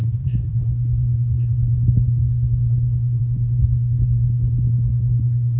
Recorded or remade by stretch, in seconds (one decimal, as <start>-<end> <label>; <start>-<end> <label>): 0.0-3.2 remade; 3.2-5.6 recorded